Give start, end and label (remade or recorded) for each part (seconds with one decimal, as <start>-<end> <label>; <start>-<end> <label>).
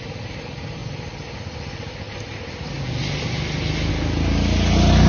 0.0-5.1 recorded